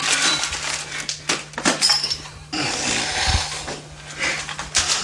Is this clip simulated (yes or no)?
no